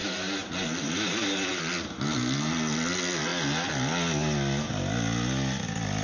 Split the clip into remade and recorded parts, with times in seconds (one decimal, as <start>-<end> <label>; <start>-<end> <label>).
0.0-1.6 remade; 1.6-6.0 recorded